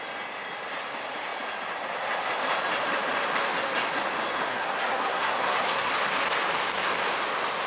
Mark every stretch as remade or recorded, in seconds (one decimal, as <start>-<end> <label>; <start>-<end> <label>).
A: 0.0-4.5 recorded; 4.5-5.9 remade; 5.9-7.7 recorded